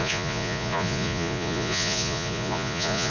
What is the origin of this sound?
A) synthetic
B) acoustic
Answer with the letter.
A